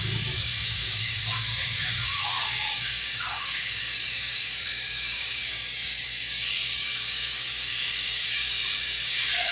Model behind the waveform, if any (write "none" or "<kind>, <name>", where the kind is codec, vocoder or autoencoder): codec, DAC